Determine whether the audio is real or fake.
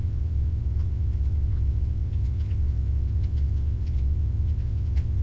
fake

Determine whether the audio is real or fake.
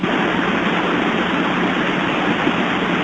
real